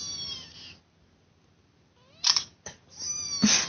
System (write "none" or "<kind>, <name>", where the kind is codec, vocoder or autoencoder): none